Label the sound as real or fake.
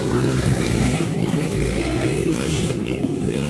fake